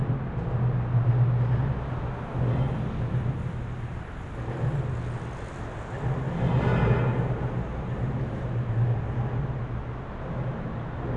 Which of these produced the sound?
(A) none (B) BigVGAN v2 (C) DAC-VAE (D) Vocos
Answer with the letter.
A